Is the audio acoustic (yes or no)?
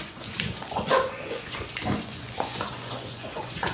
no